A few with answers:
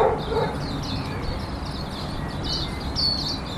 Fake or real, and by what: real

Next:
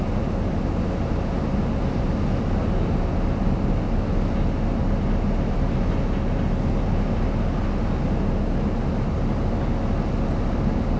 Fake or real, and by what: real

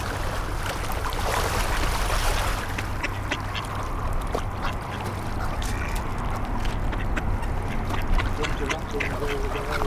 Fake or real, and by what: real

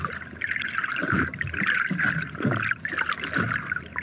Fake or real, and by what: real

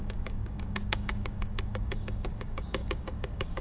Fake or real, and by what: fake, codec, DAC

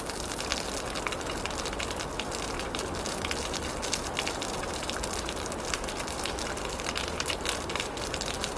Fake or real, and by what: real